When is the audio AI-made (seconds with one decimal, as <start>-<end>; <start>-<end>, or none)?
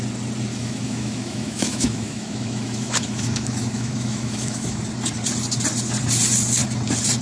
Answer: 0.5-4.8